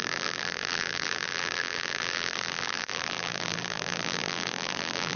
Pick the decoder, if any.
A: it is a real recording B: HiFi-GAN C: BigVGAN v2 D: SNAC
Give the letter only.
C